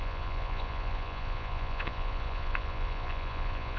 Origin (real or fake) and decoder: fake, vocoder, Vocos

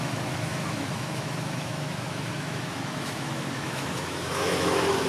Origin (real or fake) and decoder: fake, autoencoder, DAC-VAE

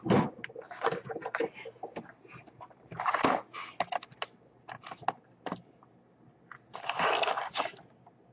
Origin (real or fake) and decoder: real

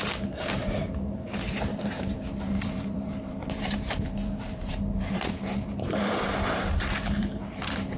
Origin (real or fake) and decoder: fake, vocoder, BigVGAN v2